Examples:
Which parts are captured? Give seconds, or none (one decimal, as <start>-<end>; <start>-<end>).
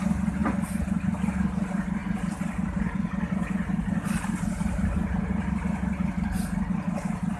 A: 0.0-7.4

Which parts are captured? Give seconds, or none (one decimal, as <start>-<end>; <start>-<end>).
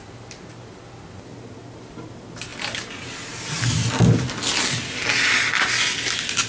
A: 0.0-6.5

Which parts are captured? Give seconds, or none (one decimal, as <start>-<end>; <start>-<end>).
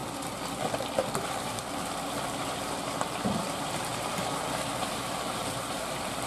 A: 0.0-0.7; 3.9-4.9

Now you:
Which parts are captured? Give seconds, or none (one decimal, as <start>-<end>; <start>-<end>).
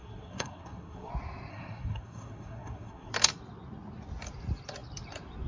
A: 1.1-1.5; 3.1-5.5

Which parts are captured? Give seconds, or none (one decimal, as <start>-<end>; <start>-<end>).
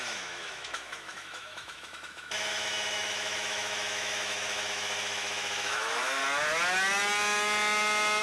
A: 6.2-8.2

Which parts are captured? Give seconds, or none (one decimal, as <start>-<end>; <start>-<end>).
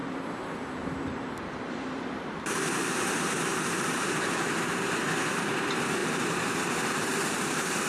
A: 4.5-6.0